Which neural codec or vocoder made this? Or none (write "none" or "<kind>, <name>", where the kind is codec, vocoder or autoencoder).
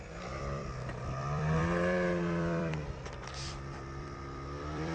vocoder, BigVGAN v2